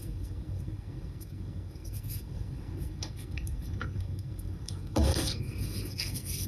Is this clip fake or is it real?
fake